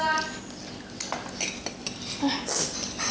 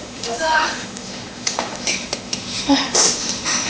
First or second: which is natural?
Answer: first